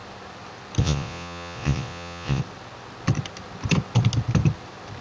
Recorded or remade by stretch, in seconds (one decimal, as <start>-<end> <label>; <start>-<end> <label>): 0.0-0.8 recorded; 0.8-2.4 remade; 2.4-5.0 recorded